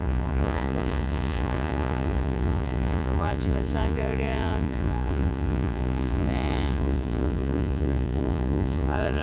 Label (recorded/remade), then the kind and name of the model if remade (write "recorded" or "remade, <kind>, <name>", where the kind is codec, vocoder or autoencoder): remade, vocoder, Vocos